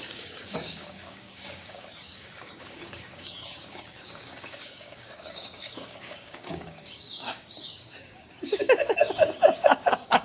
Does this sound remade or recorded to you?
remade